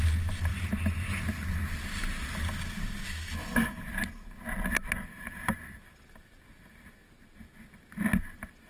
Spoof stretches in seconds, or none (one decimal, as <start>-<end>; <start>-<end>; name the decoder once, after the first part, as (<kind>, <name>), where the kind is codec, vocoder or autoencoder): none